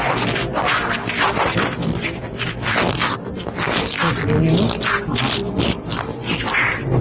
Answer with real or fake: real